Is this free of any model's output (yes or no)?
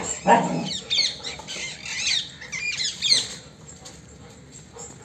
yes